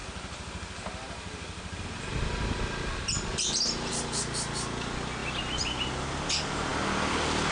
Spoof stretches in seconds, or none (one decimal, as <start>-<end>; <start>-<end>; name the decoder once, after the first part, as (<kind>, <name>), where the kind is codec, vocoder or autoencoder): none